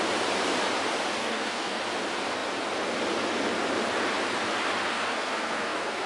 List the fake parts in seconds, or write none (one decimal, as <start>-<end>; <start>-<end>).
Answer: 1.2-1.8; 4.9-6.1

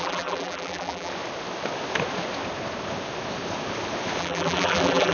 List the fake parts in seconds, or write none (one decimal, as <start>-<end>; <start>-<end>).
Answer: 0.0-1.1; 4.2-5.1